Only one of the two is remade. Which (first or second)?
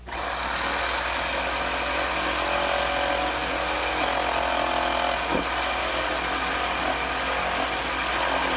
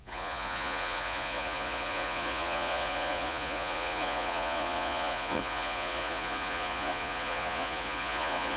second